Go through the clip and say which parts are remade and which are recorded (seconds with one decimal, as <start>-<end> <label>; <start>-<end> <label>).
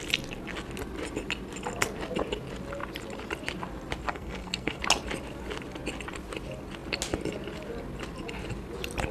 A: 0.0-4.1 recorded; 4.1-4.8 remade; 4.8-9.1 recorded